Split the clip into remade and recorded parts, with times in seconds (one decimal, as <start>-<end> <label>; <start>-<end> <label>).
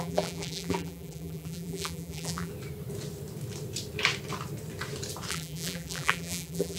0.0-2.5 remade; 2.5-5.3 recorded; 5.3-6.8 remade